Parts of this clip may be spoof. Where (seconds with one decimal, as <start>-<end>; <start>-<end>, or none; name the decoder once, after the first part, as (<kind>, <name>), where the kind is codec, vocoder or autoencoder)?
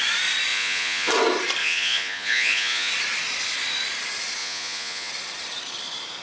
0.5-1.1 (vocoder, Vocos); 1.6-2.9; 4.4-5.1